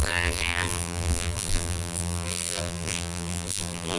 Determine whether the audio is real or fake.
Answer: fake